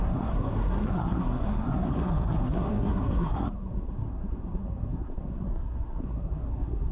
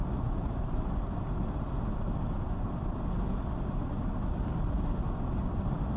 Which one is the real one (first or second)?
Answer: second